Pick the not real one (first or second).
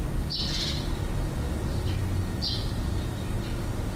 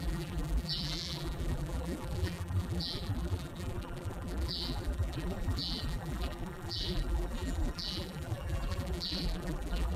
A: second